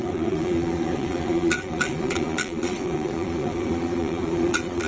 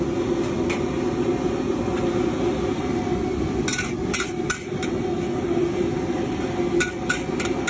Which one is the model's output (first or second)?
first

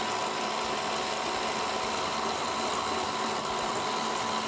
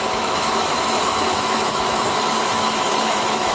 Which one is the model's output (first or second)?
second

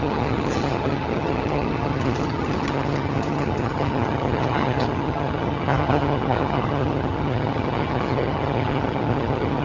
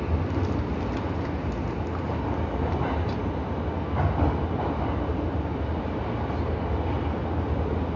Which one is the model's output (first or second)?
first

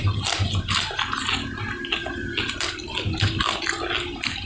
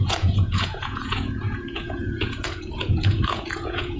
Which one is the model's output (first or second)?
second